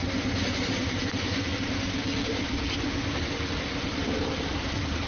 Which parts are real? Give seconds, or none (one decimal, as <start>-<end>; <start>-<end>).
0.0-0.5; 1.5-3.5